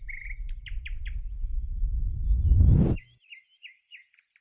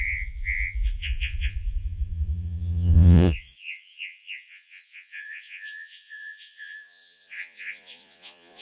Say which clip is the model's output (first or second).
second